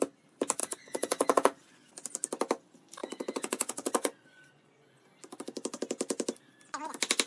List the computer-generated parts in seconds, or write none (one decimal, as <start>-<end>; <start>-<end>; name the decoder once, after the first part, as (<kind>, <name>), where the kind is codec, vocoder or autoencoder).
0.6-1.9 (vocoder, Vocos); 3.0-5.0